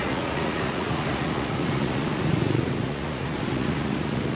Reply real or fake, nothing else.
fake